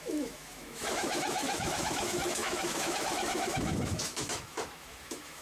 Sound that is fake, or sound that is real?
fake